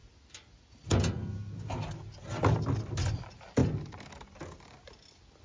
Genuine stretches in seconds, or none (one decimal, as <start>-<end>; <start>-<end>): 0.0-5.4